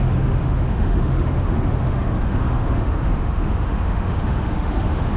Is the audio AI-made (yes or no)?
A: yes